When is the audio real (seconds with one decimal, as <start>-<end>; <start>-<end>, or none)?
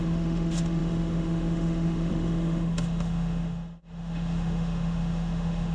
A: none